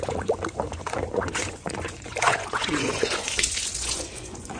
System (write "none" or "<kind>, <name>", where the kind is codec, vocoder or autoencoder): vocoder, Vocos